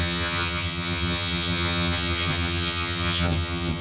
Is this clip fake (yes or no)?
yes